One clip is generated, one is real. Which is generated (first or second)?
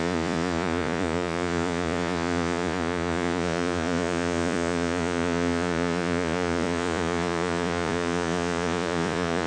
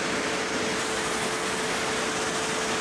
first